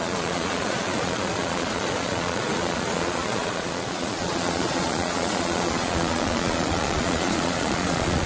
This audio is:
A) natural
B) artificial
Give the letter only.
B